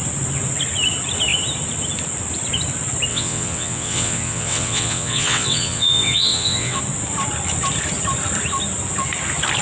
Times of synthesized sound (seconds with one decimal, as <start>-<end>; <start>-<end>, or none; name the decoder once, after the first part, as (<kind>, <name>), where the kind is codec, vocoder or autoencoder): 3.1-6.8 (vocoder, WaveNeXt)